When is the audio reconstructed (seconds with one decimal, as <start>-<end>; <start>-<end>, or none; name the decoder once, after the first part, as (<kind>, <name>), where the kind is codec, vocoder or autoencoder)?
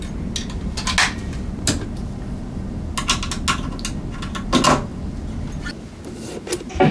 none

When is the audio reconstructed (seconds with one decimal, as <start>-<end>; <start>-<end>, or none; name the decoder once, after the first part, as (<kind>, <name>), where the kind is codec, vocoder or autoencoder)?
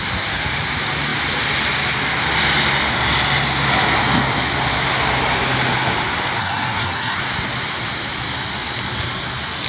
6.4-7.2 (codec, SNAC)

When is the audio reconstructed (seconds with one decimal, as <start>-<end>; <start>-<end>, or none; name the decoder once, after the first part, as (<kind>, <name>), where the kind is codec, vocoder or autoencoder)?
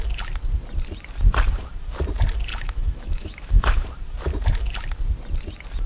2.5-3.8 (autoencoder, DAC-VAE)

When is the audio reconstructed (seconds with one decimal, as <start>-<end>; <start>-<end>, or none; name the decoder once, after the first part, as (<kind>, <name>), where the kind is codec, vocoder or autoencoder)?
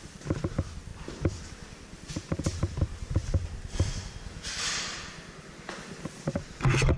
0.0-3.2 (vocoder, BigVGAN v2); 5.7-7.0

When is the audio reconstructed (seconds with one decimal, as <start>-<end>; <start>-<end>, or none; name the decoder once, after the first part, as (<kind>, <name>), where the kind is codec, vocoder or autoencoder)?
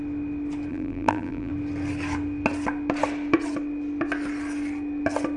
0.7-1.5 (vocoder, BigVGAN v2)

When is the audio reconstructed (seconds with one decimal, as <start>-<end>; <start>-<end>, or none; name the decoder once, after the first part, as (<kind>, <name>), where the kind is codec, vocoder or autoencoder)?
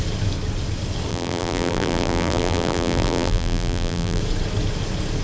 1.1-4.2 (vocoder, BigVGAN v2)